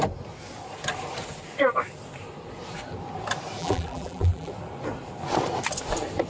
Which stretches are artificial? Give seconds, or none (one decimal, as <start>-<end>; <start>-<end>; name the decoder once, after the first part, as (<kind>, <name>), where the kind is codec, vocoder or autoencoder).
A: 3.6-4.5 (vocoder, BigVGAN v2)